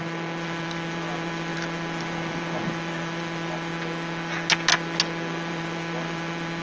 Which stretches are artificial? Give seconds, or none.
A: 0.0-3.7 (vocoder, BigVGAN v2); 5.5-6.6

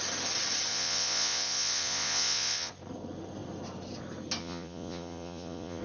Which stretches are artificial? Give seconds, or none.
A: 0.7-2.7 (vocoder, Vocos); 4.4-5.8

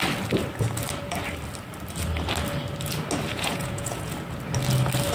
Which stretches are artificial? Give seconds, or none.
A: 3.3-4.1 (vocoder, Vocos)

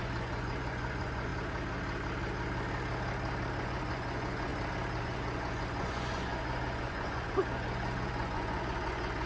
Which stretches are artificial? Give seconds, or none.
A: 0.0-1.3 (vocoder, Vocos); 3.6-4.5; 5.0-9.3

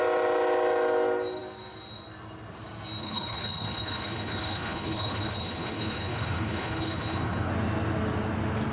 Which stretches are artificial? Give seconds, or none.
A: 3.0-7.5 (codec, HILCodec)

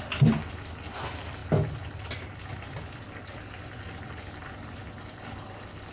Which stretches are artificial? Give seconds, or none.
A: 1.4-3.0 (vocoder, BigVGAN v2)

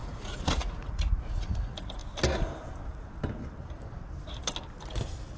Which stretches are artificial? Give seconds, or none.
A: 0.0-2.0 (vocoder, Vocos)